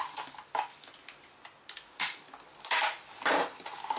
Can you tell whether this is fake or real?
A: real